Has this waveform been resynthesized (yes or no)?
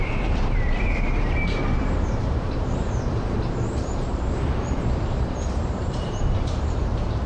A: yes